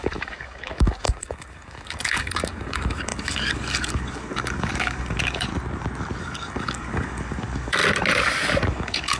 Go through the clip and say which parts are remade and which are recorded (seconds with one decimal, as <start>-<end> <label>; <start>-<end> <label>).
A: 0.0-5.5 remade; 5.5-6.2 recorded; 6.2-7.8 remade; 7.8-8.7 recorded; 8.7-9.2 remade